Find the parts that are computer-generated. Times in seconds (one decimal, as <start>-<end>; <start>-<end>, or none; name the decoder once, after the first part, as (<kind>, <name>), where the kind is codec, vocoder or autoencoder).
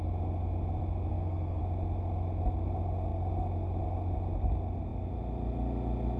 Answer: 1.1-1.6 (codec, SNAC)